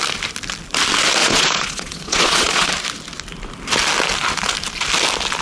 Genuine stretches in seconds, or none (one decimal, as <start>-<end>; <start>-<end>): 0.0-1.2; 2.7-5.4